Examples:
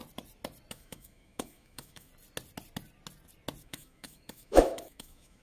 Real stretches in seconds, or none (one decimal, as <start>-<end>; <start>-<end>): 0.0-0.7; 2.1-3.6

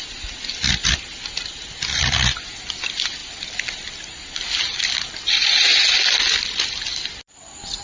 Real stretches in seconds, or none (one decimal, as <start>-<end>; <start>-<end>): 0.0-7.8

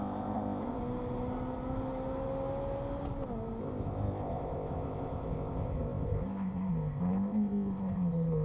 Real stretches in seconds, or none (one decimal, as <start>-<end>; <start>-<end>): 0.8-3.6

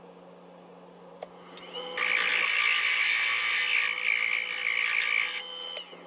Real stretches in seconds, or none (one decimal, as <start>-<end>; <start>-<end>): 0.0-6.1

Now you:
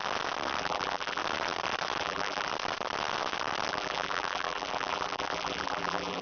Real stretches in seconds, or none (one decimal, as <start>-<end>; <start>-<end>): 0.0-0.6; 1.2-2.0; 2.5-3.7